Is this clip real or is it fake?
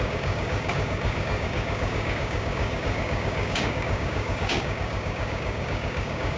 fake